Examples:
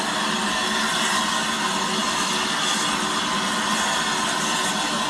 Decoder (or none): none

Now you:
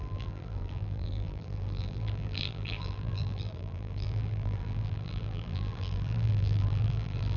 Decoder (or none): vocoder, BigVGAN v2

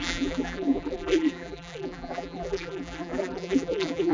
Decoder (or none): vocoder, BigVGAN v2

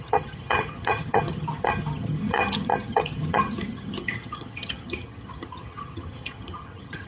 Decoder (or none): vocoder, HiFi-GAN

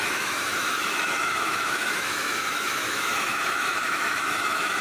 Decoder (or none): autoencoder, DAC-VAE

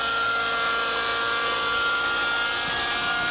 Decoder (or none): none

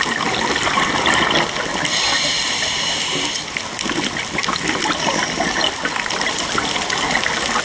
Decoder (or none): none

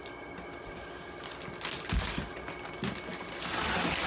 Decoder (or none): none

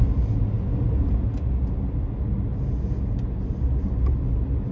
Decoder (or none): none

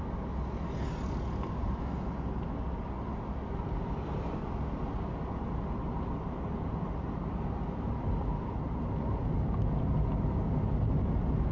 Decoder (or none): none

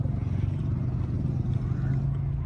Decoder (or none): none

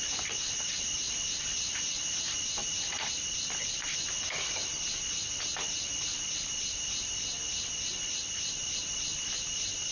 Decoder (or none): none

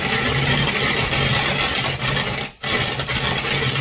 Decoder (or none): none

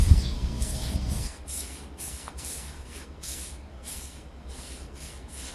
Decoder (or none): codec, SNAC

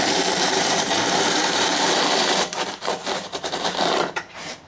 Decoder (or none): vocoder, BigVGAN v2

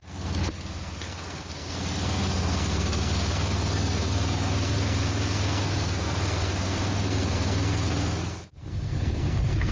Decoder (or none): codec, SNAC